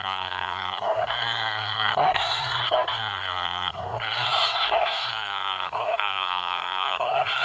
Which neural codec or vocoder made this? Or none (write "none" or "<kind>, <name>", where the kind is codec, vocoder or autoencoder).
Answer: codec, SNAC